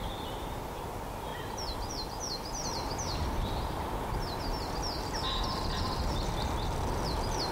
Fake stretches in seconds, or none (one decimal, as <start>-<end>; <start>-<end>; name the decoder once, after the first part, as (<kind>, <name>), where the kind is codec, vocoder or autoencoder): none